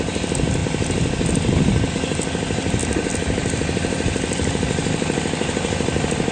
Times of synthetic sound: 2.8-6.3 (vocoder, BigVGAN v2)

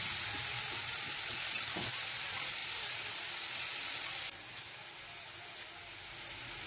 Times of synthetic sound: none

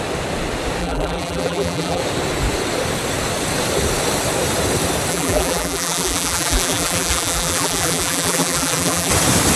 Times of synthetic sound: 0.8-2.0 (vocoder, BigVGAN v2); 5.1-9.1

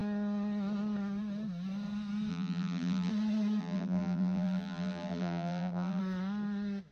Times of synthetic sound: 2.3-3.1 (vocoder, BigVGAN v2); 3.6-6.0

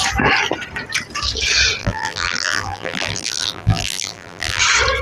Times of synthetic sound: 1.8-4.6 (vocoder, BigVGAN v2)

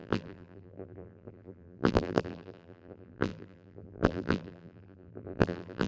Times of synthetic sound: 0.0-5.9 (vocoder, BigVGAN v2)